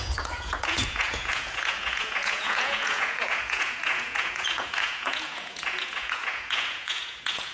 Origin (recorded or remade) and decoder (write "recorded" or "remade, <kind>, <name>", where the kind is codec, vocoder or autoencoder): remade, vocoder, Vocos